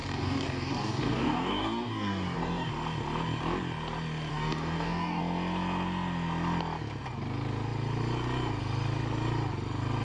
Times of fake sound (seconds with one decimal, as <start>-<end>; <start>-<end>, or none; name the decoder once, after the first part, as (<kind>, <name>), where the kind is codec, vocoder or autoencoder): 0.0-2.7 (codec, DAC); 4.3-5.2